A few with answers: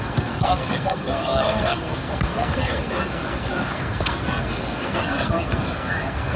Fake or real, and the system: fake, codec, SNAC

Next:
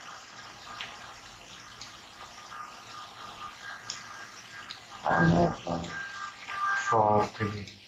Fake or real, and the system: real